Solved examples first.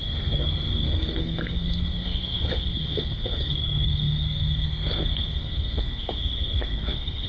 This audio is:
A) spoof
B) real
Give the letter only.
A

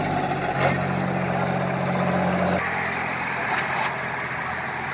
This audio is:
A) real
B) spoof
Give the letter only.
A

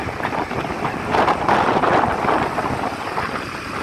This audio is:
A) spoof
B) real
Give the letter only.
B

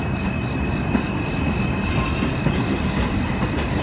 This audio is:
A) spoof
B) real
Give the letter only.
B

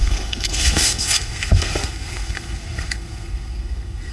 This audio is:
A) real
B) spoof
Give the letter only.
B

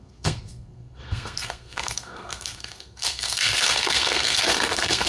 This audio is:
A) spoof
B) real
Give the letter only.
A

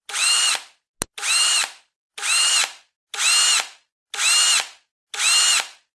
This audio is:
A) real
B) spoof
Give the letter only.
A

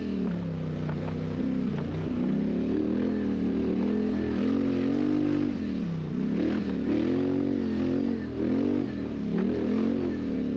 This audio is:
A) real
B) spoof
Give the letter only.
A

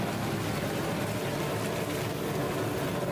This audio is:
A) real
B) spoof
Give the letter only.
A